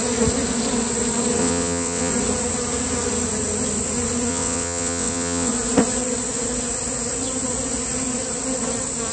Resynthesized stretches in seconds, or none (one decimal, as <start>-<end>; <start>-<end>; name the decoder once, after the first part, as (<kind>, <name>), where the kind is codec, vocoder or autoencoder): 1.4-2.1 (vocoder, WaveNeXt); 4.3-5.5